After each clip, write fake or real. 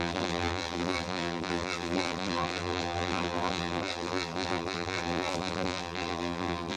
fake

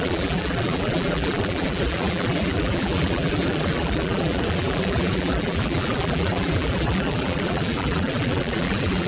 fake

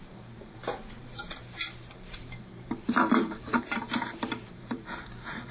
fake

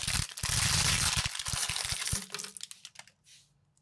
real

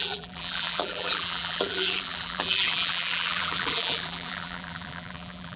fake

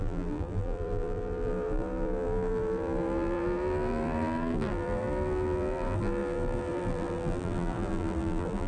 fake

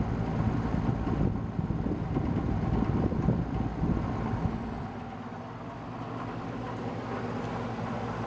real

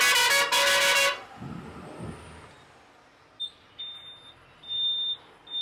real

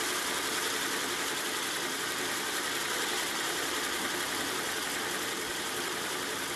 fake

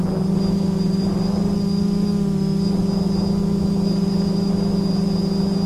real